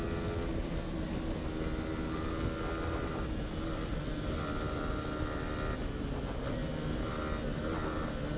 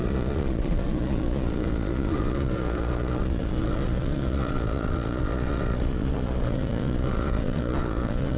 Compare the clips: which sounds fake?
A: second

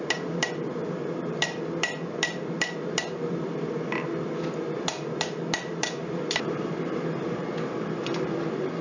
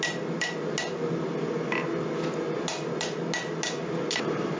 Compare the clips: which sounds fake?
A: first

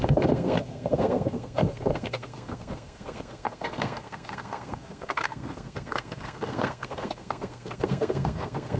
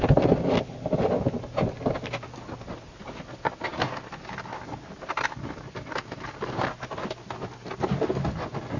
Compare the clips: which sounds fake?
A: first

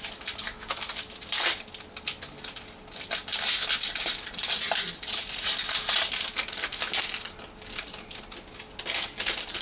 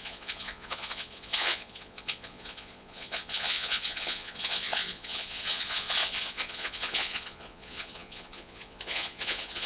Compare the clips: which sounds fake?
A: second